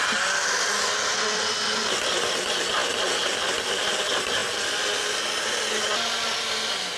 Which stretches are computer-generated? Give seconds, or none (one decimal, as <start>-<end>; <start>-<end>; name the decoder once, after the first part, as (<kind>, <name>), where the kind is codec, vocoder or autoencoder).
none